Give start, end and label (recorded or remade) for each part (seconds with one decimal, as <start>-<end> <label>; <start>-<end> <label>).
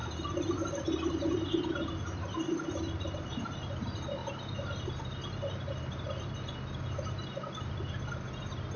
0.0-8.8 recorded